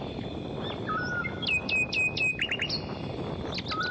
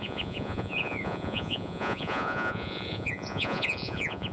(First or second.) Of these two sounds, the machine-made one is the second